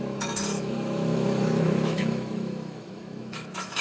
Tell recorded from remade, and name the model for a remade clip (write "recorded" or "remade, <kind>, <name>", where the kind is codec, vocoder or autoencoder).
remade, autoencoder, DAC-VAE